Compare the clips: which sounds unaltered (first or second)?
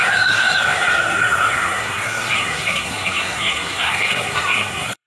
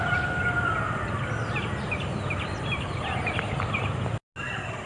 second